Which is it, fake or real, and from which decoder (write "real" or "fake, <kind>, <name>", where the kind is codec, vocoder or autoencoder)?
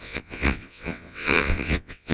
fake, vocoder, WaveNeXt